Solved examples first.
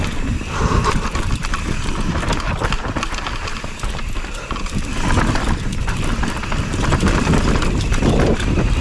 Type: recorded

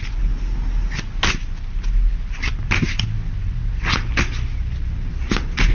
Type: recorded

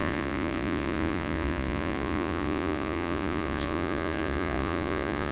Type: remade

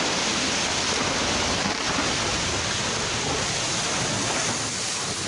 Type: recorded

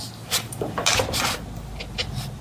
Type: recorded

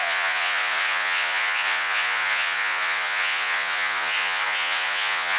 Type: remade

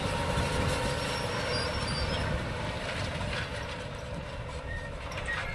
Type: recorded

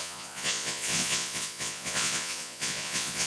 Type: remade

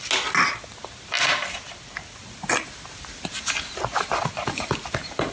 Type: recorded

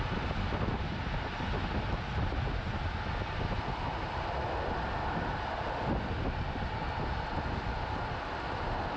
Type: recorded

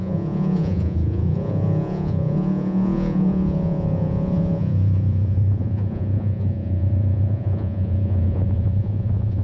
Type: remade